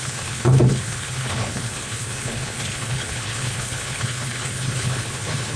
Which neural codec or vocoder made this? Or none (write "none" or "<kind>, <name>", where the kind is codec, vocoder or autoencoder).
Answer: codec, HILCodec